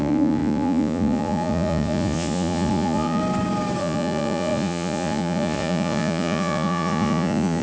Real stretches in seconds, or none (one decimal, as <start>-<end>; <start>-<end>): 3.2-3.8